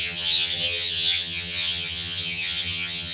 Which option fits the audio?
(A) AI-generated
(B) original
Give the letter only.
A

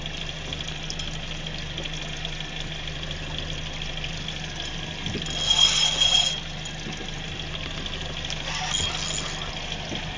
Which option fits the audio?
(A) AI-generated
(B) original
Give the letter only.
B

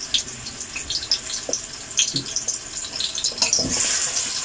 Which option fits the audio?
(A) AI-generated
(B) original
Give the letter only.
B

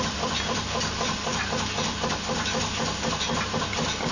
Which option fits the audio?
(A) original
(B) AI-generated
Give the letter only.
A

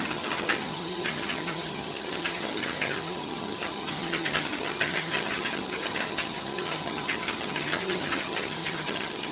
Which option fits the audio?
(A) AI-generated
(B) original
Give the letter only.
A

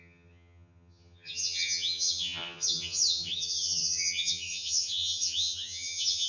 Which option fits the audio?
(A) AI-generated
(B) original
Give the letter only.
A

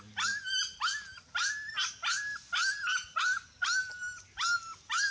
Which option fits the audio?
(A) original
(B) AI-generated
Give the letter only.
A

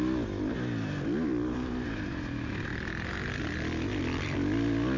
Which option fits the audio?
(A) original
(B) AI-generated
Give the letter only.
A